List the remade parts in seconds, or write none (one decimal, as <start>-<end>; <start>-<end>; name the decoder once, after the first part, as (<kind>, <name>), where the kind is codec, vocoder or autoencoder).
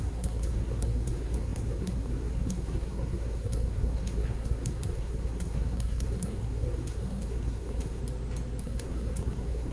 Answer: 0.0-8.0 (codec, SNAC); 8.6-9.7